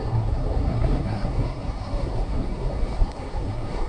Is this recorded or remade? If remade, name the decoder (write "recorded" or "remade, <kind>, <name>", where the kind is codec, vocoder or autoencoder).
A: remade, codec, SNAC